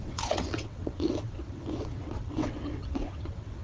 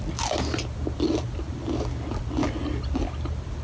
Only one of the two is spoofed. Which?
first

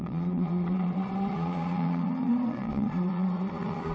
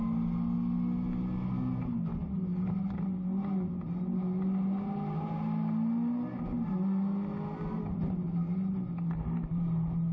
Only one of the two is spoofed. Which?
first